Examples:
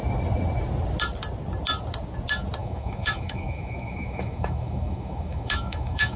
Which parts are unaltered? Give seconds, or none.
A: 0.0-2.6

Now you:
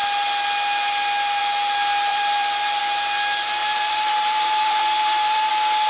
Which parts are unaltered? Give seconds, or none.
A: 0.0-2.1; 2.8-3.6; 5.5-5.9

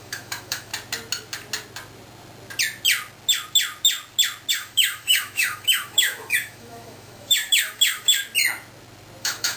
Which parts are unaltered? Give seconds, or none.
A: 0.7-4.5; 8.2-9.2

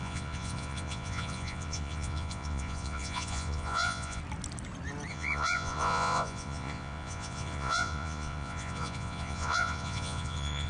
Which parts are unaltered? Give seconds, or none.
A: 4.2-5.1

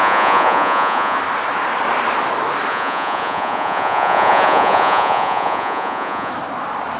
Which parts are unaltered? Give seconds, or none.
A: 1.2-2.7; 6.3-7.0

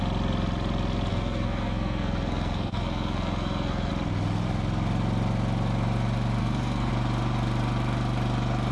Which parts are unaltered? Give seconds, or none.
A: 0.0-1.1; 3.9-6.4; 6.9-8.7